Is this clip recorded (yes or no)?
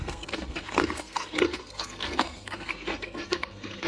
no